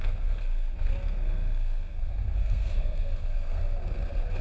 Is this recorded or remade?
remade